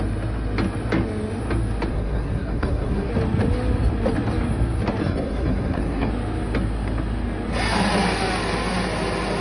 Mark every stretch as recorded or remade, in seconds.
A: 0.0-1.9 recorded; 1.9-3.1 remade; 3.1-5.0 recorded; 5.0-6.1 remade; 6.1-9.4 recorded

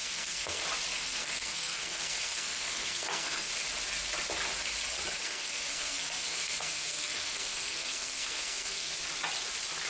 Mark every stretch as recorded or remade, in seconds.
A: 0.0-0.6 remade; 0.6-1.0 recorded; 1.0-3.5 remade; 3.5-5.2 recorded; 5.2-8.9 remade; 8.9-9.9 recorded

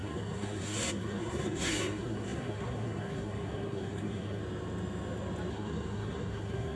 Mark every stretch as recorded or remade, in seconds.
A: 0.0-4.4 remade; 4.4-5.5 recorded; 5.5-6.8 remade

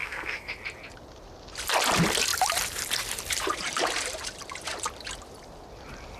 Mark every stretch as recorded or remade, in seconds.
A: 0.0-0.5 remade; 0.5-6.2 recorded

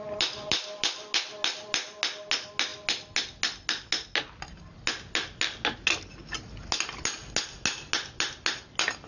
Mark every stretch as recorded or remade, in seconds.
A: 0.0-9.1 recorded